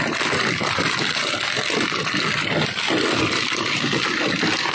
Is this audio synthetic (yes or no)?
no